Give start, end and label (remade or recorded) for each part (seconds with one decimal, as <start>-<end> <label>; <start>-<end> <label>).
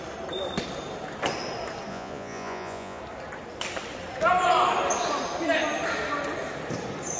0.0-1.9 recorded; 1.9-3.0 remade; 3.0-7.2 recorded